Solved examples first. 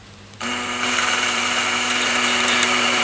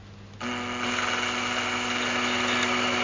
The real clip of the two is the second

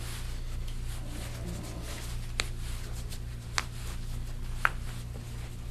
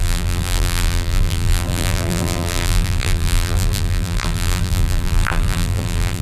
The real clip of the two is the first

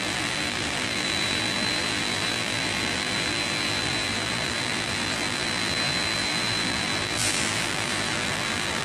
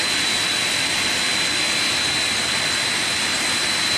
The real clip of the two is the second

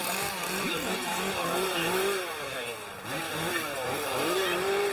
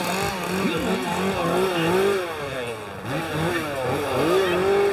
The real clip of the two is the second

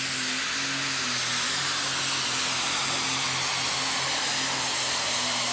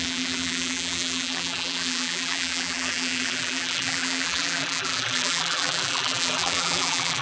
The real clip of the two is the first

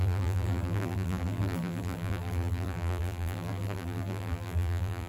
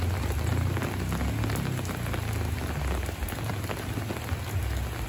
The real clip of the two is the second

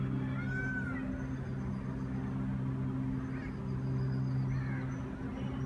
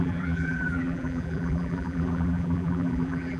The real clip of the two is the first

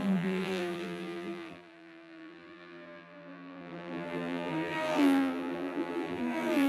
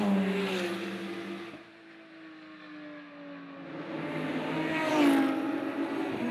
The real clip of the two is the second